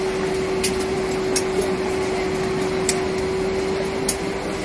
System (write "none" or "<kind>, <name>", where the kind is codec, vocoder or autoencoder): none